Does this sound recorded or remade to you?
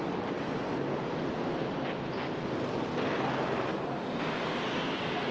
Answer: recorded